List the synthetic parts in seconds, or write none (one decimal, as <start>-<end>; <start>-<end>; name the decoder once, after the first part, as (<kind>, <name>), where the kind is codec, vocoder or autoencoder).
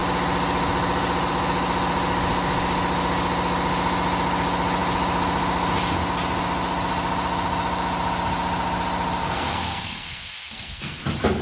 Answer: 9.2-11.0 (codec, SNAC)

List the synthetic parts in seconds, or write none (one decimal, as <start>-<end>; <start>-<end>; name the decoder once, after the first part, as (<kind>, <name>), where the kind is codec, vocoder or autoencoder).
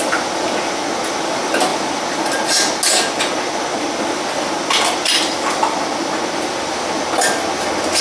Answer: none